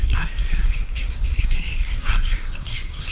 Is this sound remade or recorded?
remade